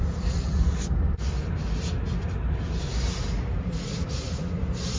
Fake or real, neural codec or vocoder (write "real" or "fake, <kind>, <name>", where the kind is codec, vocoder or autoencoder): real